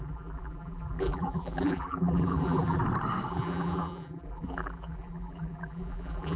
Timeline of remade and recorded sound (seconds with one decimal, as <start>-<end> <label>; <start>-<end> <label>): 0.0-2.8 remade; 2.8-3.3 recorded; 3.3-6.4 remade

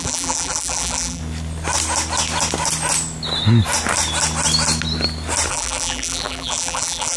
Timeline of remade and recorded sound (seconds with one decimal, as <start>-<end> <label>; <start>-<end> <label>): 0.0-1.2 remade; 1.2-5.5 recorded; 5.5-7.2 remade

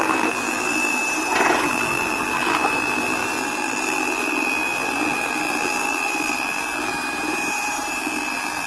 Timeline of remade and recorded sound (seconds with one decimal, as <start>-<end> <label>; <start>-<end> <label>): 0.0-1.0 remade; 1.0-1.7 recorded; 1.7-6.9 remade; 6.9-8.0 recorded; 8.0-8.7 remade

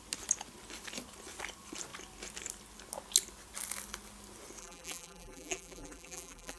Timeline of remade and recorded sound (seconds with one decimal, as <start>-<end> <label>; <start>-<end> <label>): 0.0-4.6 recorded; 4.6-6.6 remade

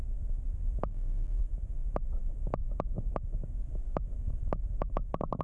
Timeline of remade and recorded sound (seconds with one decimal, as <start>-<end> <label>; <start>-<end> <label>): 0.0-0.9 recorded; 0.9-1.4 remade; 1.4-5.4 recorded

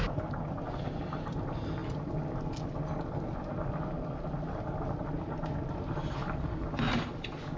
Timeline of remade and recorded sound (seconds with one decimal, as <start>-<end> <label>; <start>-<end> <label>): 0.0-7.6 recorded

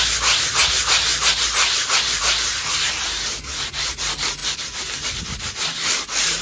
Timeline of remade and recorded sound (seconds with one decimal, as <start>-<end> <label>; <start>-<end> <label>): 0.0-1.1 recorded; 1.1-2.2 remade; 2.2-4.4 recorded; 4.4-5.2 remade; 5.2-6.4 recorded

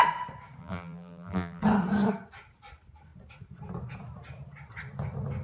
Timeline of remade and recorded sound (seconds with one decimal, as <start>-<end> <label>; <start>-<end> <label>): 0.0-0.6 recorded; 0.6-1.6 remade; 1.6-5.4 recorded